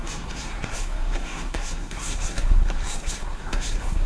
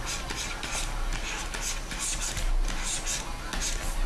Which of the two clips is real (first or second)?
second